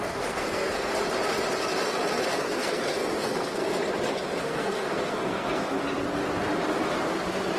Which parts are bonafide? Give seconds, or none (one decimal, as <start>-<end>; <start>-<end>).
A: 0.9-2.3; 3.8-4.4; 5.6-7.6